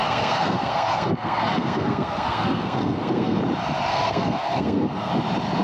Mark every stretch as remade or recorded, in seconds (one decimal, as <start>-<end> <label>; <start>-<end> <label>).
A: 0.0-3.4 remade; 3.4-3.9 recorded; 3.9-5.1 remade; 5.1-5.6 recorded